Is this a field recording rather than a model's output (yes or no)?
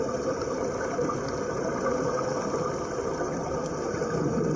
yes